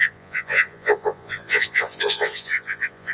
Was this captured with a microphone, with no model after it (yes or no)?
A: no